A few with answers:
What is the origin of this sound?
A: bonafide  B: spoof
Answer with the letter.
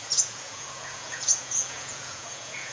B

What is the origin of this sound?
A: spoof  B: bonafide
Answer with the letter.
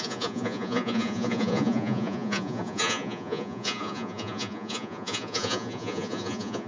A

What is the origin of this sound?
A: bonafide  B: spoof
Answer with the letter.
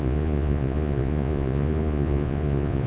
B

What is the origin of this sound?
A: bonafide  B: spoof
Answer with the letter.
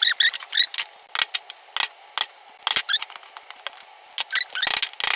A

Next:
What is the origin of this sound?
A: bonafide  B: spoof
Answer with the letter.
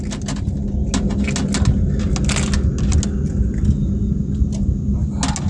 A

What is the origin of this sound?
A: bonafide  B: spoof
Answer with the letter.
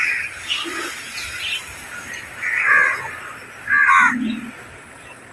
A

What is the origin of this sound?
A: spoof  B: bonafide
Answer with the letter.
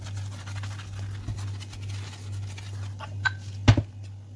B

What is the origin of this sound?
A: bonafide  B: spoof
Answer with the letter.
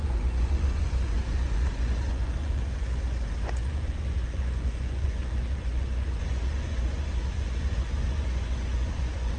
B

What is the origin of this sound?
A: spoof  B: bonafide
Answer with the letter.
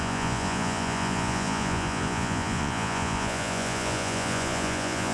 A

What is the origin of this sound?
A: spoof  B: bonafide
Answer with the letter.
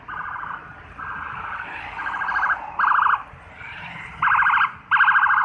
B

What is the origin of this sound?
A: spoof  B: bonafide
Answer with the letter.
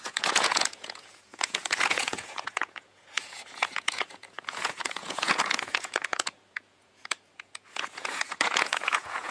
A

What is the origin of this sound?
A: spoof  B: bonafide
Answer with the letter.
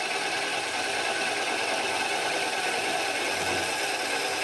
B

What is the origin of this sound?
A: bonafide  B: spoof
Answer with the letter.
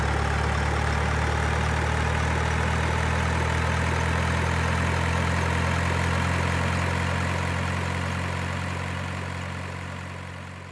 A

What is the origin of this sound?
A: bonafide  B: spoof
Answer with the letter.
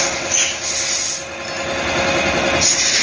A